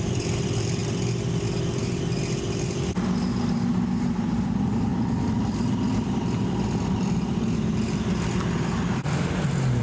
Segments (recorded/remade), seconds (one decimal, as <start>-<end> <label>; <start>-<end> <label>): 0.0-0.8 remade; 0.8-3.5 recorded; 3.5-9.8 remade